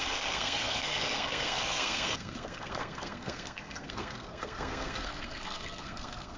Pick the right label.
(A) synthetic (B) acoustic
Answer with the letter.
A